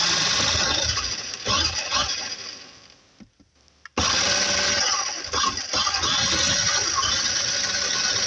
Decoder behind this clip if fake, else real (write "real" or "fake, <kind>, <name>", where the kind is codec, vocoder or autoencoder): real